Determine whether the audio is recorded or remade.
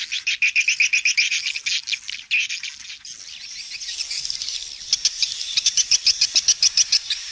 recorded